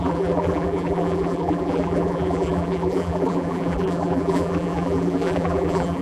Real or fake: fake